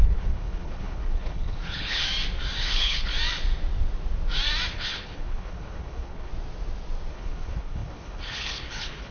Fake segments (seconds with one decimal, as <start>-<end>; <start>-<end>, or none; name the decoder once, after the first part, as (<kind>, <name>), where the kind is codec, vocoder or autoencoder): 0.0-2.0 (codec, HILCodec); 2.6-3.1; 4.7-6.3; 7.1-9.1